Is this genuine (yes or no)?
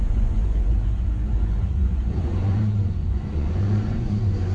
no